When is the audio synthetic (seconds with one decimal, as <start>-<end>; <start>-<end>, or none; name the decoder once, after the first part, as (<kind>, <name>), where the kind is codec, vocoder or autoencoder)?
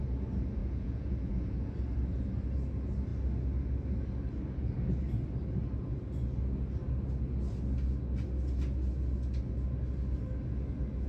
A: 0.6-1.7 (vocoder, Vocos)